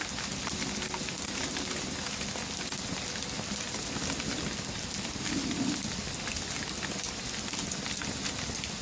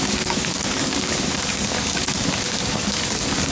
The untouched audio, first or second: first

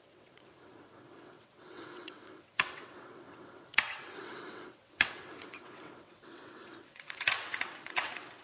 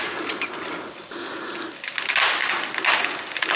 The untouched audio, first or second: second